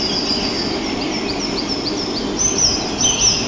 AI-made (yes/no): no